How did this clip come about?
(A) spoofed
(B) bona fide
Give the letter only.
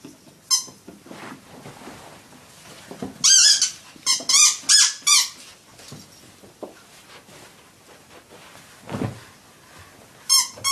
B